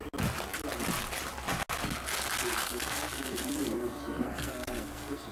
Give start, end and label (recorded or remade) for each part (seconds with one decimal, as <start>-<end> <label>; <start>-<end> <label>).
0.0-2.4 recorded; 2.4-5.3 remade